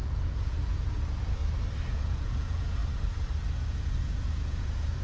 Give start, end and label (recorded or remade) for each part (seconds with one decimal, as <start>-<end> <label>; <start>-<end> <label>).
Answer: 0.0-1.4 remade; 1.4-1.9 recorded; 1.9-2.8 remade; 2.8-3.7 recorded; 3.7-5.0 remade